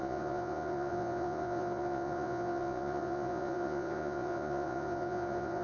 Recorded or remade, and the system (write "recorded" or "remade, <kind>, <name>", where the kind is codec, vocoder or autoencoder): remade, vocoder, Vocos